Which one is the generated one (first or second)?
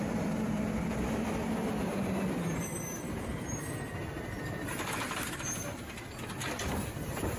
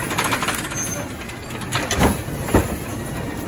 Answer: first